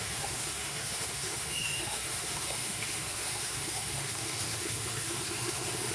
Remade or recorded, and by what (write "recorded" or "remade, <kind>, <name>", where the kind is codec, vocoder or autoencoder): remade, autoencoder, DAC-VAE